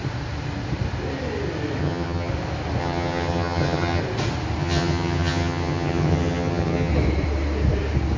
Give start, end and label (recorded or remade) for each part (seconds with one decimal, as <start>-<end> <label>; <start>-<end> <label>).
0.0-1.8 recorded; 1.8-2.3 remade; 2.3-2.8 recorded; 2.8-4.0 remade; 4.0-4.6 recorded; 4.6-6.9 remade; 6.9-8.2 recorded

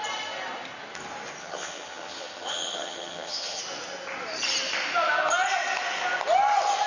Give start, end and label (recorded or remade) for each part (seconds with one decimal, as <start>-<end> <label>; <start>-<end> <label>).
0.0-1.4 recorded; 1.4-3.6 remade; 3.6-6.9 recorded